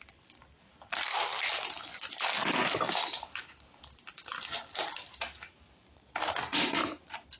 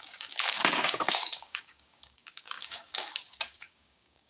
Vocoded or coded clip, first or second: second